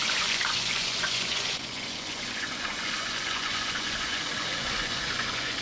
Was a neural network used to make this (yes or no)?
yes